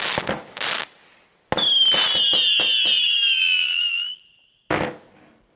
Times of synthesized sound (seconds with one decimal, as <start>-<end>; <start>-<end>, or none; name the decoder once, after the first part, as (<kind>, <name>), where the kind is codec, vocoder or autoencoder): 3.4-4.2 (vocoder, BigVGAN v2)

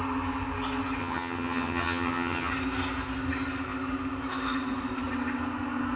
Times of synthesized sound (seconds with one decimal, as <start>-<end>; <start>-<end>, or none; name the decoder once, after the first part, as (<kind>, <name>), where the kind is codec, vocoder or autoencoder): 1.0-2.5 (vocoder, HiFi-GAN)